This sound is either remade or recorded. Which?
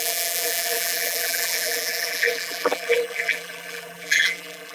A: remade